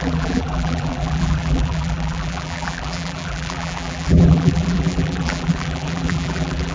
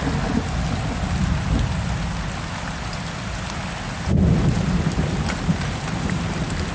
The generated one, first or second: first